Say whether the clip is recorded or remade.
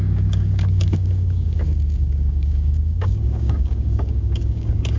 remade